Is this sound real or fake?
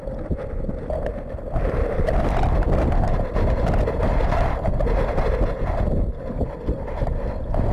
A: real